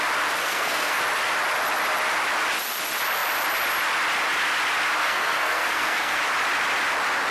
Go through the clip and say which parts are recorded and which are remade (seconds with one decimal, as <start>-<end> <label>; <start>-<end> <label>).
0.0-0.4 recorded; 0.4-1.0 remade; 1.0-5.0 recorded; 5.0-6.2 remade; 6.2-7.3 recorded

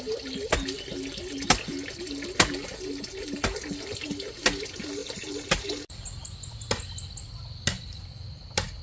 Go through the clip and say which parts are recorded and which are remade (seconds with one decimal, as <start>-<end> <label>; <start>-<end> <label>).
0.0-8.8 recorded

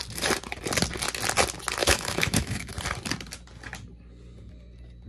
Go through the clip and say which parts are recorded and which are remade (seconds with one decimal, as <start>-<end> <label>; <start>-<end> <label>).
0.0-1.8 recorded; 1.8-2.7 remade; 2.7-5.1 recorded

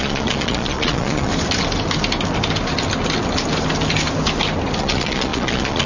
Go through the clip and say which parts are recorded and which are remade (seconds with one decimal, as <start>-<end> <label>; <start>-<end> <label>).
0.0-1.3 remade; 1.3-4.8 recorded; 4.8-5.9 remade

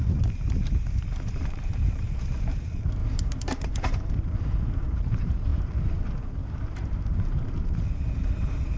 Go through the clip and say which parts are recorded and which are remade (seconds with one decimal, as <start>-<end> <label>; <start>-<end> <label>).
0.0-8.8 remade